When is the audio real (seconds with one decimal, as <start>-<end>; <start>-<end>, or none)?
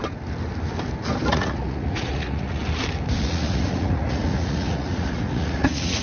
0.0-1.3; 2.6-3.2